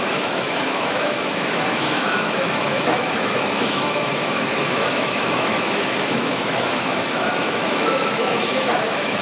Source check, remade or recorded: remade